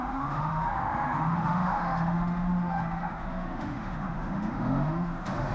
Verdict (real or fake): fake